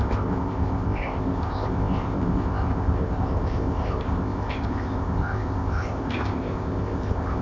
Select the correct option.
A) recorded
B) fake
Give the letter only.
B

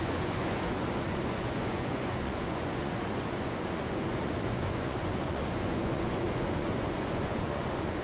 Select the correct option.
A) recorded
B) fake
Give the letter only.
B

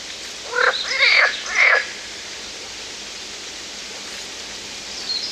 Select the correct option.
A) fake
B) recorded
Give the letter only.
B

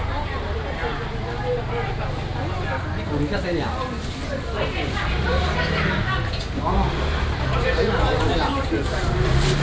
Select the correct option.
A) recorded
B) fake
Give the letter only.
A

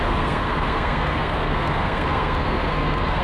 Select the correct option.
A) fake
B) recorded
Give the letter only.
A